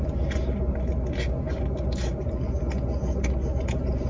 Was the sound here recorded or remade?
recorded